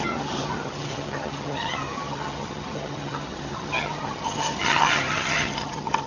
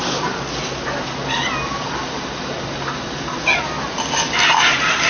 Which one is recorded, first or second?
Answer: second